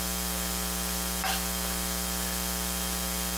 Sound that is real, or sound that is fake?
real